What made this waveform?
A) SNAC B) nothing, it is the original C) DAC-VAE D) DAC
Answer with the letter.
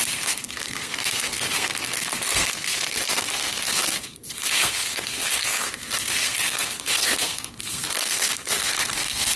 A